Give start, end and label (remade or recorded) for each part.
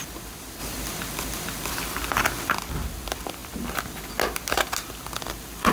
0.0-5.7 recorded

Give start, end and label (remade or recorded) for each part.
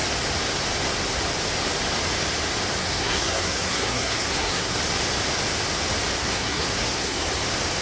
0.0-2.8 recorded; 2.8-4.8 remade; 4.8-6.2 recorded; 6.2-7.3 remade; 7.3-7.8 recorded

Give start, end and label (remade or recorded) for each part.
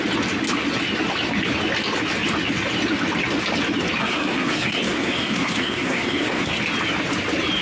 0.0-4.0 recorded; 4.0-6.6 remade; 6.6-7.6 recorded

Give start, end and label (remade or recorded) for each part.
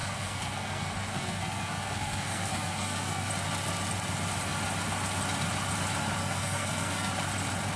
0.0-3.3 remade; 3.3-6.2 recorded; 6.2-7.1 remade; 7.1-7.8 recorded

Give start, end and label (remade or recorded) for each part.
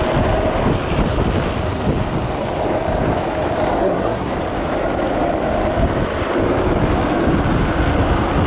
0.0-3.8 recorded; 3.8-4.3 remade; 4.3-8.5 recorded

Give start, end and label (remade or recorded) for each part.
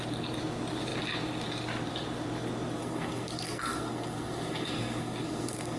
0.0-2.8 recorded; 2.8-5.8 remade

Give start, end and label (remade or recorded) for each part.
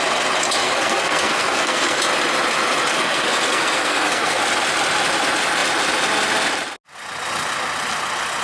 0.0-0.6 recorded; 0.6-2.0 remade; 2.0-2.9 recorded; 2.9-4.4 remade; 4.4-8.4 recorded